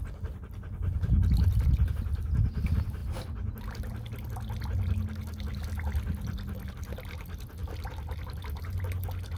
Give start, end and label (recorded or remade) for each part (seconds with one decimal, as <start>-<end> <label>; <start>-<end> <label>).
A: 0.0-9.4 recorded